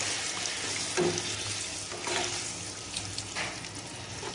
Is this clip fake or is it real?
real